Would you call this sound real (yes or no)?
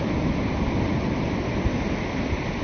yes